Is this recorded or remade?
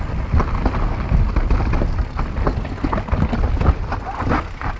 recorded